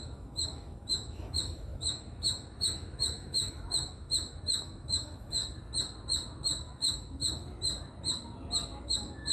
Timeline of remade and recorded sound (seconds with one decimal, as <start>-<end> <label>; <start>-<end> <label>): 0.0-5.4 remade; 5.4-6.3 recorded; 6.3-7.4 remade; 7.4-8.8 recorded; 8.8-9.3 remade